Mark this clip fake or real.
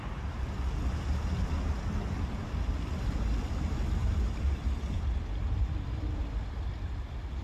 real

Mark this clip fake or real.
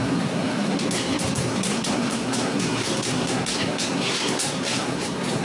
fake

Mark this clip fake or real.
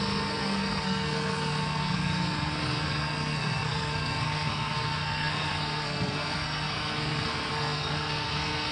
fake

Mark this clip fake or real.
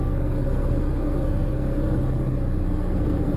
fake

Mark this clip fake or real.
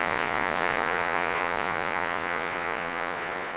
fake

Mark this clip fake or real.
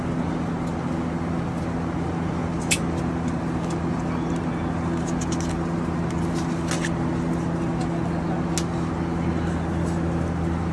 real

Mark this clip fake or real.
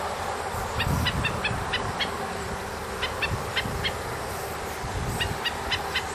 real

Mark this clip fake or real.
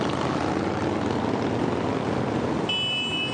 real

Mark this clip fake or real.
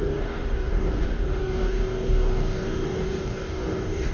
fake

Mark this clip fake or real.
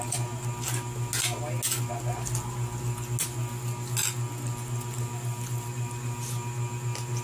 real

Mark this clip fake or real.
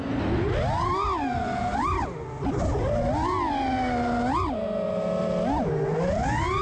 real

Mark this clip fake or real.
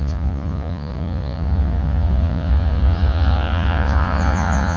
fake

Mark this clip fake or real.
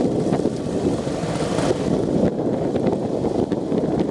fake